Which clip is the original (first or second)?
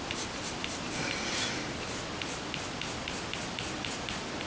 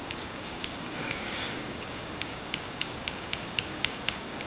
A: first